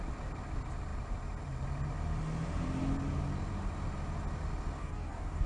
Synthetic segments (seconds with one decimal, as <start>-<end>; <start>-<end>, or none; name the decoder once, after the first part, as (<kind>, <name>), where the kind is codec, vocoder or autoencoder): 4.8-5.5 (codec, DAC)